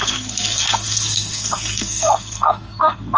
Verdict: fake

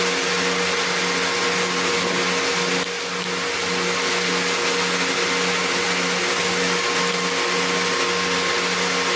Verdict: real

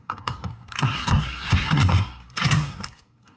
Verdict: fake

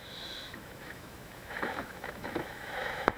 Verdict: fake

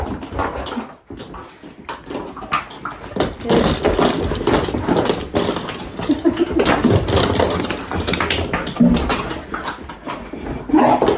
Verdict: real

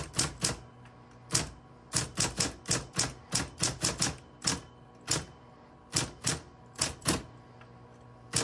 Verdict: real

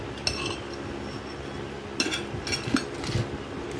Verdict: real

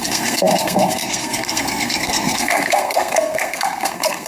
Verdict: fake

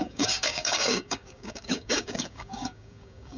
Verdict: fake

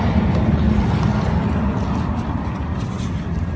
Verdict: real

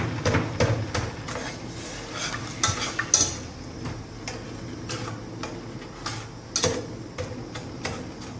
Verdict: real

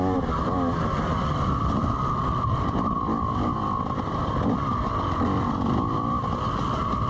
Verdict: fake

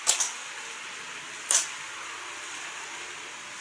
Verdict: real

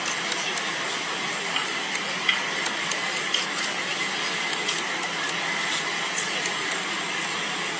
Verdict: real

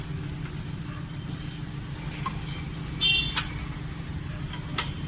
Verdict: real